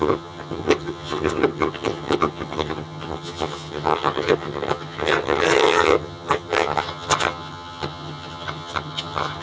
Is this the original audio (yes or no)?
no